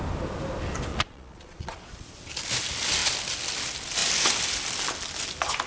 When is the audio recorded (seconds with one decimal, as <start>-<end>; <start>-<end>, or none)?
0.0-0.9; 2.1-5.7